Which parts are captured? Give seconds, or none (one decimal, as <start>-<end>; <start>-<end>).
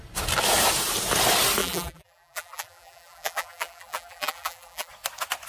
0.0-1.6; 4.9-5.5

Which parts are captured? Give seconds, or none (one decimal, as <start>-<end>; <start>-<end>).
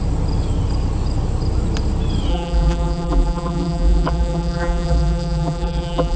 0.0-2.3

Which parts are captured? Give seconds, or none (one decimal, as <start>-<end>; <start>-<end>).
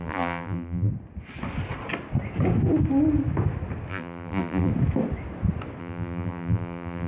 0.9-3.9; 4.7-5.8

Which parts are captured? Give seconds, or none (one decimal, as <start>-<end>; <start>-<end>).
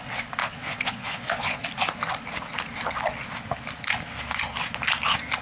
0.0-0.4; 1.6-5.4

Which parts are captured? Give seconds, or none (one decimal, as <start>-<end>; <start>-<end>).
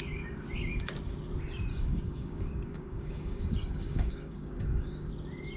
0.0-1.7; 5.1-5.6